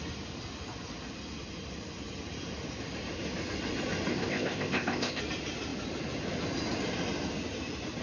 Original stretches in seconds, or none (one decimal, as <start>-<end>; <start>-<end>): 0.0-4.1; 5.2-8.0